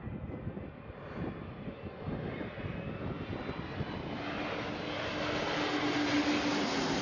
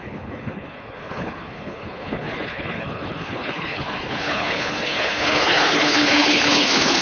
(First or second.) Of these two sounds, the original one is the first